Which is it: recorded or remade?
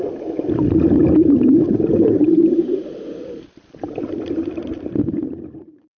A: recorded